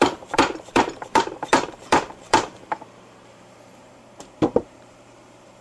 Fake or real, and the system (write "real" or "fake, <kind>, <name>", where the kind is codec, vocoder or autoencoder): fake, vocoder, BigVGAN v2